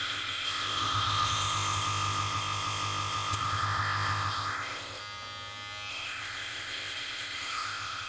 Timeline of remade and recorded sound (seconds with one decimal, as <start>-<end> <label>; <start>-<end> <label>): 0.0-5.0 remade; 5.0-5.9 recorded; 5.9-8.1 remade